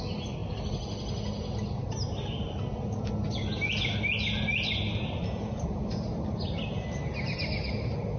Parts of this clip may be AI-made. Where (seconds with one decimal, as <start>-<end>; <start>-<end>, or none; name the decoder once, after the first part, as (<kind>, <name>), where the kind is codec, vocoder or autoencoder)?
none